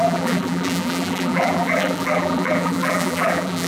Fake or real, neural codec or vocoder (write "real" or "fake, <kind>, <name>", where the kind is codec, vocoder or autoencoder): fake, vocoder, BigVGAN v2